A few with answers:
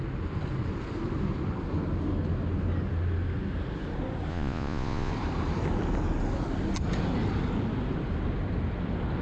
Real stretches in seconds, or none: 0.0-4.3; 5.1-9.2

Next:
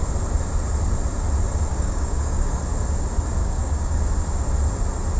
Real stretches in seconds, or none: 0.0-1.7; 2.6-3.4; 4.0-5.2

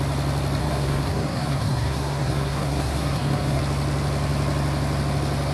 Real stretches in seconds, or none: 0.0-0.6; 3.6-5.5

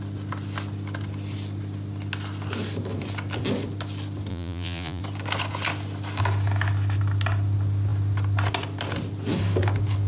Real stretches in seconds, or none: 0.0-4.3; 5.0-10.1